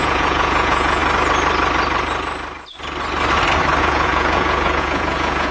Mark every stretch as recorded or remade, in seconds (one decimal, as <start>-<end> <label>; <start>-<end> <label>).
0.0-1.0 remade; 1.0-3.8 recorded; 3.8-5.5 remade